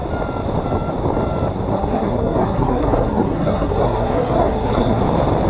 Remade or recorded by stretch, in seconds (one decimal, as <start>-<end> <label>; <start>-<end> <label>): 0.0-1.7 recorded; 1.7-5.0 remade; 5.0-5.5 recorded

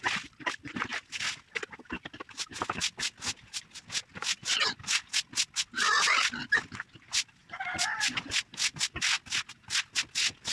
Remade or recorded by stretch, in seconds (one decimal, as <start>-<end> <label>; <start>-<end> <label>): 0.0-7.4 recorded; 7.4-8.3 remade; 8.3-10.5 recorded

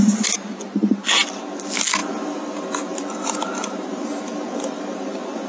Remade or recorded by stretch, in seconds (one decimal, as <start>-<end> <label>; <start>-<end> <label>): 0.0-2.0 recorded; 2.0-5.5 remade